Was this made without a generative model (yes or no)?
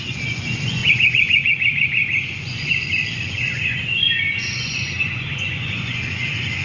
no